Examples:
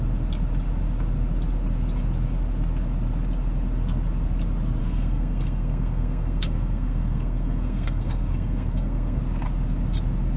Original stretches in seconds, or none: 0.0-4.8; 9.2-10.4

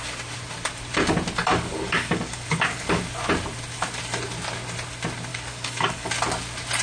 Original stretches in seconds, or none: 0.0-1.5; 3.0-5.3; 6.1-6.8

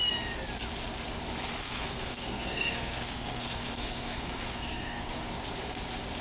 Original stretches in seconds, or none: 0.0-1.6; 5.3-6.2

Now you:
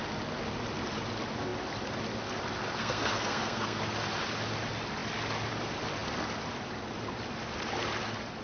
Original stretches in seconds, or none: 0.0-2.8; 3.8-8.4

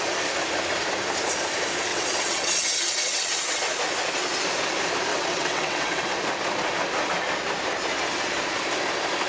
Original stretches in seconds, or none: 0.0-1.9; 3.6-5.1; 6.1-9.3

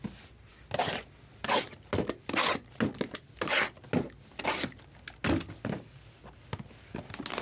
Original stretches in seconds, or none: 0.0-7.4

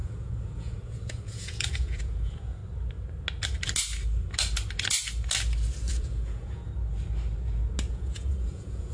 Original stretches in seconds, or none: 2.6-5.9; 6.7-7.9